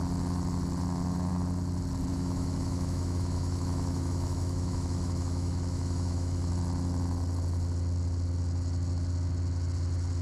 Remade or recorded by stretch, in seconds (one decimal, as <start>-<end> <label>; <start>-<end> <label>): 0.0-2.1 recorded; 2.1-6.5 remade; 6.5-10.2 recorded